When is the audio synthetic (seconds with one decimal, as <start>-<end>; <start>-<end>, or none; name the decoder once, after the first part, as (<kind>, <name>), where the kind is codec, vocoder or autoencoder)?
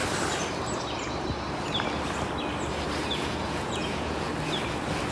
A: 3.1-4.3 (vocoder, Vocos)